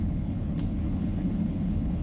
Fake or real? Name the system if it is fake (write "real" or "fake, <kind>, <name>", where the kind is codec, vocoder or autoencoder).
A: fake, codec, HILCodec